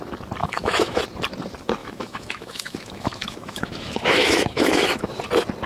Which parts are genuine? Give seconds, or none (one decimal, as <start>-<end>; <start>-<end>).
0.0-0.4; 1.0-1.8; 5.2-5.7